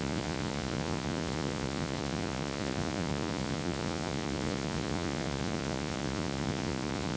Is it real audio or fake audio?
fake